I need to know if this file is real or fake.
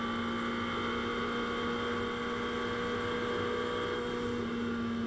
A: real